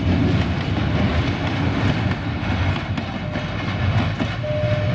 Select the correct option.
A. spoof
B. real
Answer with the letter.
B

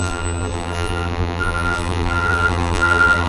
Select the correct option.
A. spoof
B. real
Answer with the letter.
A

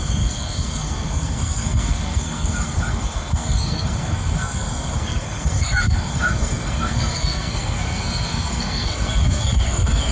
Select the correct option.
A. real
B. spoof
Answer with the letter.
B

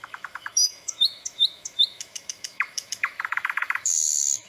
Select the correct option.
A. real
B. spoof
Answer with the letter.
B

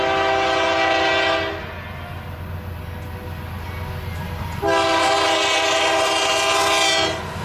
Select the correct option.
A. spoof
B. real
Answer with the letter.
B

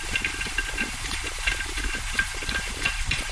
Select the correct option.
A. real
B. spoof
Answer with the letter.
B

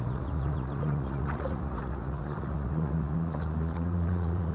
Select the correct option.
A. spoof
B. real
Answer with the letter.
A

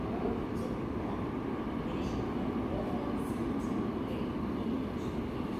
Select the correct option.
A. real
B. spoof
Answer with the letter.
A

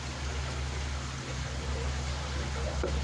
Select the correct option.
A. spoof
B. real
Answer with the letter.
B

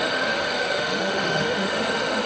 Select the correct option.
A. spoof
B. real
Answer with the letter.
A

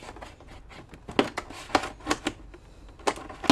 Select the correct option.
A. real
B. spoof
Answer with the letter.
A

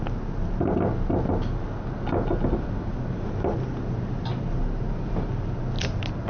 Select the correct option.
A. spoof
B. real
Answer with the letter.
B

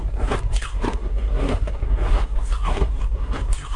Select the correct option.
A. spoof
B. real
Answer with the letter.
A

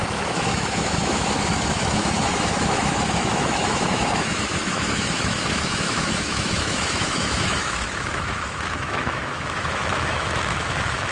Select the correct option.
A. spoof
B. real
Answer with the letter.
A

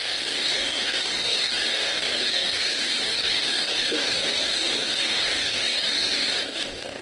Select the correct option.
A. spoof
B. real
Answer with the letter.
A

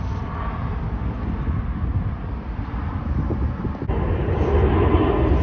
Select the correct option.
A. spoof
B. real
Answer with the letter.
B